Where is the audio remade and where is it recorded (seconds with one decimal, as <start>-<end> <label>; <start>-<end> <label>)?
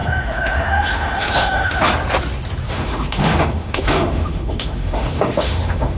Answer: 0.0-1.8 remade; 1.8-2.7 recorded; 2.7-6.0 remade